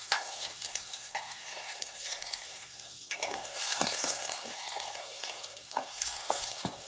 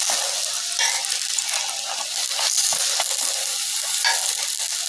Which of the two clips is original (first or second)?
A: second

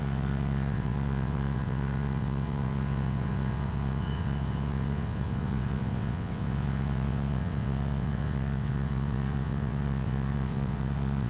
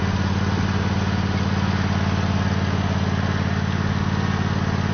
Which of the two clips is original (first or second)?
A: second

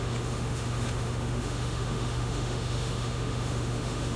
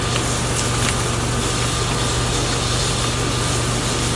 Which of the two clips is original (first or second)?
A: second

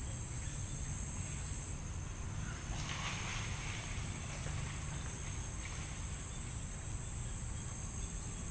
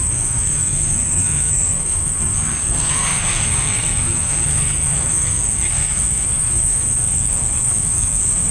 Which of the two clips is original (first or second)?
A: first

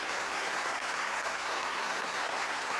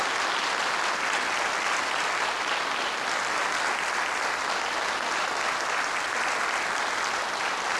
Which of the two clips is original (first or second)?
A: second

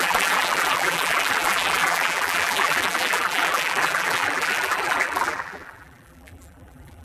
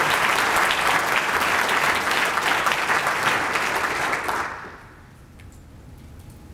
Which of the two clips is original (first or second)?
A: second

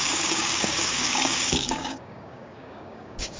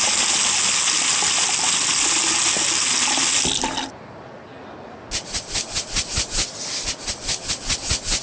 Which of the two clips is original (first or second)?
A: second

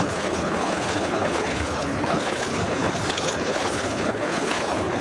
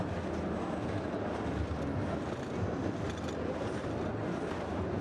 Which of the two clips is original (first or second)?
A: second